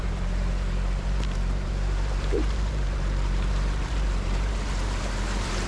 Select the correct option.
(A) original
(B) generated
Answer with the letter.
B